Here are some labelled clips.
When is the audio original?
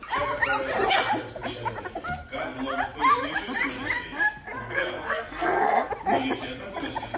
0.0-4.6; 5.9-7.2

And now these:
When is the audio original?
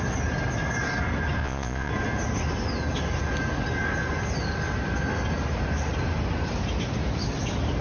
0.0-1.4; 1.9-7.8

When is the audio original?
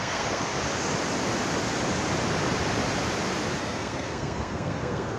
0.5-3.6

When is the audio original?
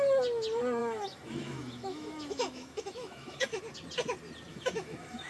0.0-0.8; 3.6-4.5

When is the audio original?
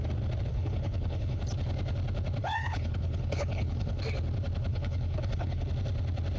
0.0-0.5; 1.4-2.4; 4.0-4.7; 5.7-6.4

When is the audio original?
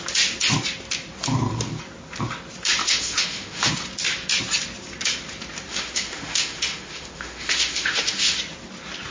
0.0-2.8; 3.7-5.7; 8.4-9.1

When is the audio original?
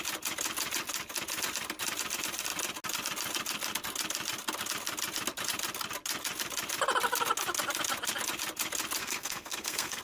0.0-9.0